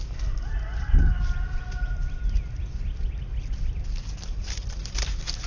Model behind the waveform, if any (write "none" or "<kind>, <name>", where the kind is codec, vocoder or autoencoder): none